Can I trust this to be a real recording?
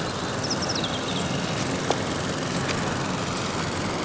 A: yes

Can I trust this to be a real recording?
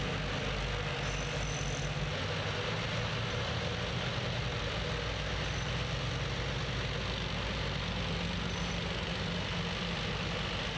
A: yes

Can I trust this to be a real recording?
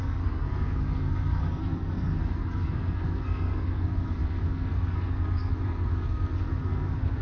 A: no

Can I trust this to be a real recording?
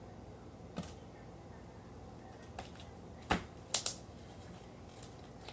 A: yes